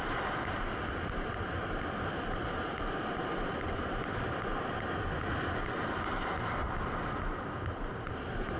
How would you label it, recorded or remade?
recorded